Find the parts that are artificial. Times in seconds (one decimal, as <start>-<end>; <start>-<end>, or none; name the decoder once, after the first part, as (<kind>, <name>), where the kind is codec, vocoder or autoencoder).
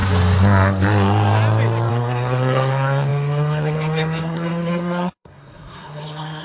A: 1.9-6.4 (codec, SNAC)